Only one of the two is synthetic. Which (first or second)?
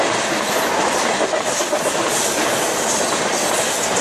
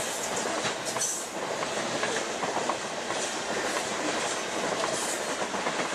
first